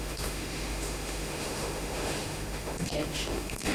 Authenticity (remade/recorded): remade